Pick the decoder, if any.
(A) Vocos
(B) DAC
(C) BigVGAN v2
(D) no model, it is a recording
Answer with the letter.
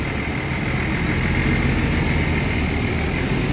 D